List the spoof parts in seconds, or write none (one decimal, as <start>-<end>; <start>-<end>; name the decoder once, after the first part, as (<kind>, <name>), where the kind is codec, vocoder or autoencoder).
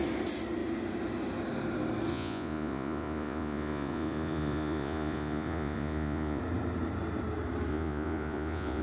2.1-6.4 (vocoder, Vocos); 7.7-8.8